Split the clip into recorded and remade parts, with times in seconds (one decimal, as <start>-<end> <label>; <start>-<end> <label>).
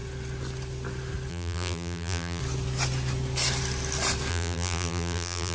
0.0-1.3 recorded; 1.3-2.4 remade; 2.4-4.3 recorded; 4.3-5.5 remade